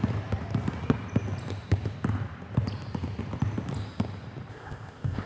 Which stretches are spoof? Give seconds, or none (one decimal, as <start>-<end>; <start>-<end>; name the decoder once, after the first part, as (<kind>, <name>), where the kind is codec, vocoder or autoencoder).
4.5-5.3 (codec, ZipCodec)